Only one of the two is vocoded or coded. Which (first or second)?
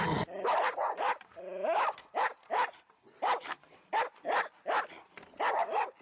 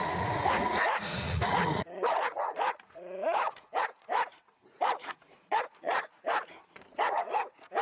second